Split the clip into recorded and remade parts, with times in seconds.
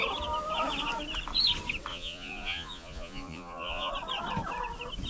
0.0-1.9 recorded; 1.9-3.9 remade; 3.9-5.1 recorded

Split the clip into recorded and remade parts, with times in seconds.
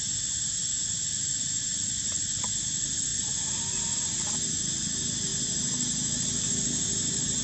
0.0-7.4 recorded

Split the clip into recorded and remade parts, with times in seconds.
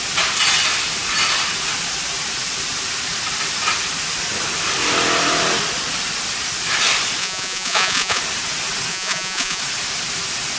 0.0-7.2 recorded; 7.2-8.2 remade; 8.2-8.9 recorded; 8.9-9.6 remade; 9.6-10.6 recorded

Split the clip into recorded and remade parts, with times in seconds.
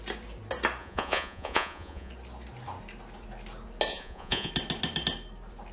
0.0-0.8 recorded; 0.8-2.1 remade; 2.1-3.9 recorded; 3.9-4.5 remade; 4.5-5.7 recorded